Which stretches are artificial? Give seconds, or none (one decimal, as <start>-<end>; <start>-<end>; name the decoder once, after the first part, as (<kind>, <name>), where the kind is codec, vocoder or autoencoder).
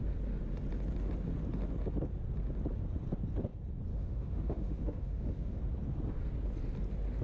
3.9-5.6 (autoencoder, DAC-VAE)